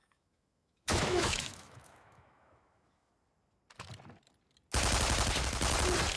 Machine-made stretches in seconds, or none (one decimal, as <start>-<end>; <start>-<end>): 0.0-3.1